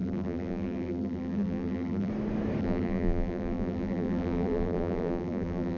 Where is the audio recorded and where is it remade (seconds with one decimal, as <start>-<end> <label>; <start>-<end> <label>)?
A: 0.0-2.1 remade; 2.1-2.6 recorded; 2.6-5.8 remade